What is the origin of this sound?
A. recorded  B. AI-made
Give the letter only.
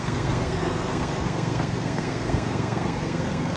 B